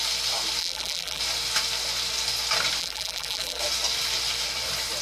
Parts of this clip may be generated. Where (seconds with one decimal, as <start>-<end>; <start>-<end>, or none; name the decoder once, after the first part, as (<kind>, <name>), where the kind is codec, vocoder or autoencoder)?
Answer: 0.6-1.2 (vocoder, BigVGAN v2); 2.8-3.6